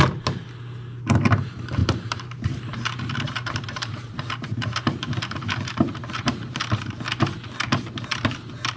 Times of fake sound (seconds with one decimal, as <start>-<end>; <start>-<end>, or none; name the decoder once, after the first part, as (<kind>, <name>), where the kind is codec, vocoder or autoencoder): 1.8-6.6 (vocoder, BigVGAN v2)